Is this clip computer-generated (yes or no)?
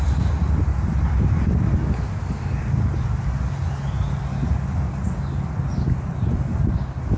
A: no